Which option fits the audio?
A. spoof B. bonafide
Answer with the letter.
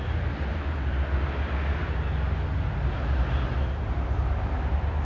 B